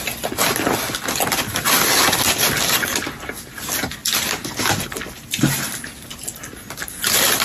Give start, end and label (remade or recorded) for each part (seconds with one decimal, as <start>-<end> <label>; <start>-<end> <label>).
0.0-7.4 recorded

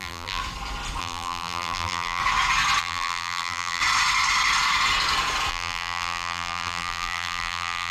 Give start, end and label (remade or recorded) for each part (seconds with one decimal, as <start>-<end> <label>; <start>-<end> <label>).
0.0-0.4 remade; 0.4-1.0 recorded; 1.0-2.2 remade; 2.2-2.8 recorded; 2.8-3.8 remade; 3.8-5.5 recorded; 5.5-7.9 remade

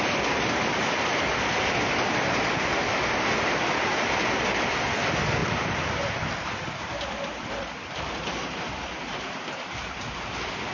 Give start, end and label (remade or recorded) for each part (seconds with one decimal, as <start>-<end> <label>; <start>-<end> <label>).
0.0-5.4 recorded; 5.4-10.7 remade

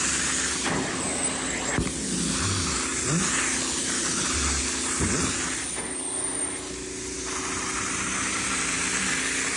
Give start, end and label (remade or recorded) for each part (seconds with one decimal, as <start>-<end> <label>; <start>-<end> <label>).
0.0-9.6 recorded

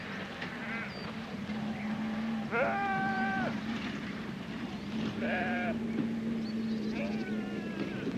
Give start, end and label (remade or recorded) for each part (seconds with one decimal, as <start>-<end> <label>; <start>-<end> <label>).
0.0-2.8 recorded; 2.8-5.8 remade; 5.8-8.2 recorded